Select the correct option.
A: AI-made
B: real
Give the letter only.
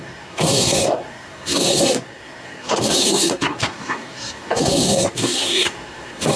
A